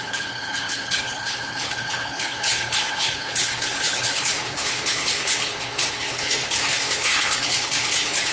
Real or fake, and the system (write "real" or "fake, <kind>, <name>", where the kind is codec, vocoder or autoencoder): fake, codec, HILCodec